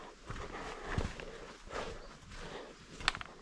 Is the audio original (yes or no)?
yes